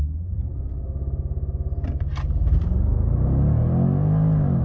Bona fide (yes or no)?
yes